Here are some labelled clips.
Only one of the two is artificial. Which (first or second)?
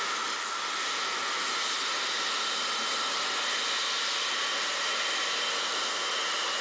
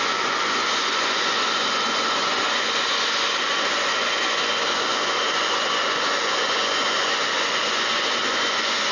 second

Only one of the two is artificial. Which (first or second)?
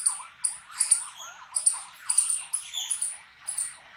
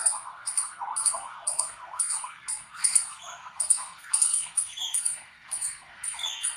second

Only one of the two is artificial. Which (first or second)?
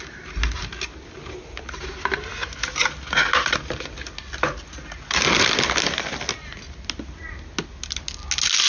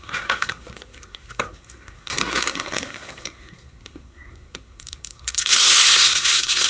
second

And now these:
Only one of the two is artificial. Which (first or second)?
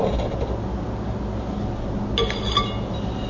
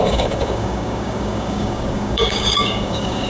second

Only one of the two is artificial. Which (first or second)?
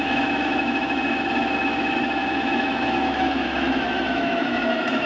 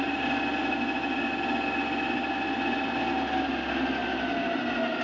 first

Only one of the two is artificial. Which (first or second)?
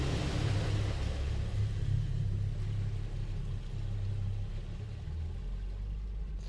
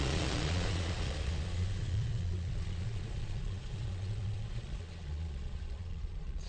second